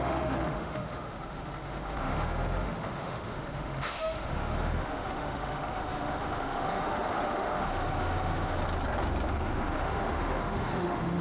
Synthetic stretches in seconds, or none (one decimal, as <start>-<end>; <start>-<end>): 0.0-8.6; 9.3-11.2